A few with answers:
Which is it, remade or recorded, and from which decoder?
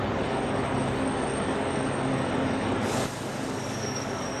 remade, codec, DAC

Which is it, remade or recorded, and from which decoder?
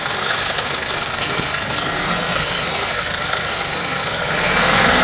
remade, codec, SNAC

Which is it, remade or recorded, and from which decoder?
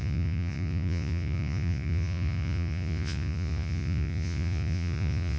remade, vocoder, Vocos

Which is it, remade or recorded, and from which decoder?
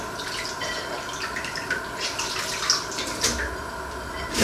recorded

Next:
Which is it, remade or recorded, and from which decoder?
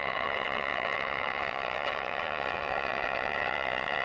remade, vocoder, WaveNeXt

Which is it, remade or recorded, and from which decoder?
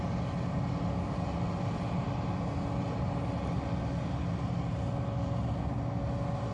recorded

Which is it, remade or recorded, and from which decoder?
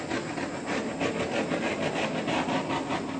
recorded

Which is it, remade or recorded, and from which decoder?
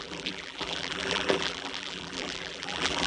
remade, vocoder, BigVGAN v2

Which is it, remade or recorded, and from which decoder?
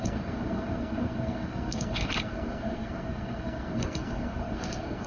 remade, codec, SNAC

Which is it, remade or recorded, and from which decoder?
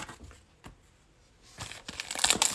recorded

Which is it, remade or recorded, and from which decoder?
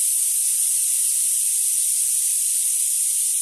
recorded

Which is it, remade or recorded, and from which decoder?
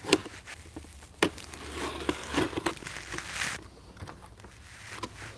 recorded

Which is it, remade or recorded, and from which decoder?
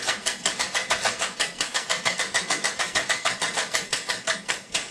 remade, codec, SNAC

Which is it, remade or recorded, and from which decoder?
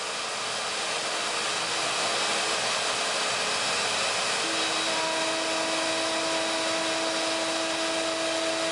recorded